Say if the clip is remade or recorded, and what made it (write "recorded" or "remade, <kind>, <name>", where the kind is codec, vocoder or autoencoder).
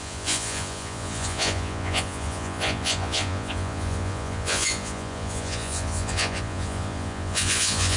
remade, vocoder, Vocos